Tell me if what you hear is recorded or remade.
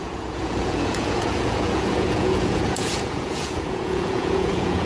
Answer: remade